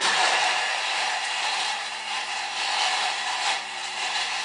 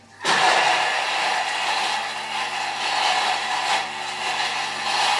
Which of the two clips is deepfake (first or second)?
first